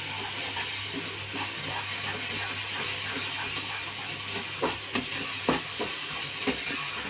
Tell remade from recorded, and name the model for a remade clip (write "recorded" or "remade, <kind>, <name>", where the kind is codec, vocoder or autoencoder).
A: recorded